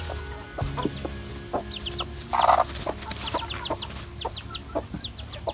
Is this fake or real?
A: real